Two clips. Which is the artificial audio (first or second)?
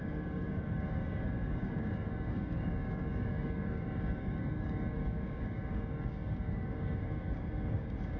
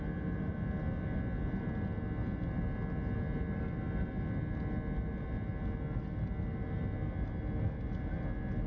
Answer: first